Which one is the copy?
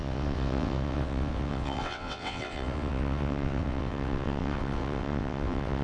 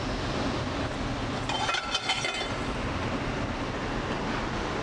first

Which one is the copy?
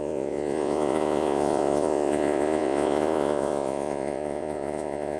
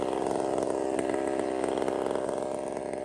first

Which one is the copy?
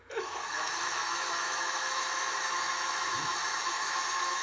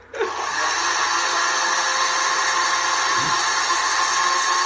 first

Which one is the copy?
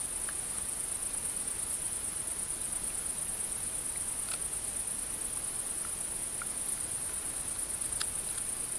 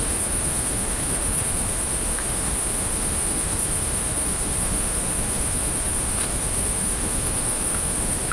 second